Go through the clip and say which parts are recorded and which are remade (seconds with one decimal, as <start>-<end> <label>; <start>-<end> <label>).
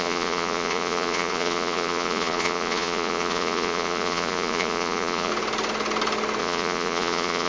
0.0-5.3 remade; 5.3-6.4 recorded; 6.4-7.5 remade